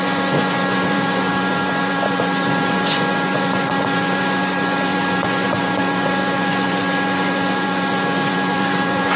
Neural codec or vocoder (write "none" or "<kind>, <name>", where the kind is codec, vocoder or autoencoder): vocoder, Vocos